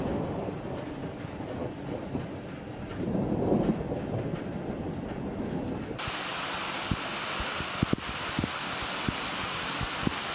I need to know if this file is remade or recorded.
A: recorded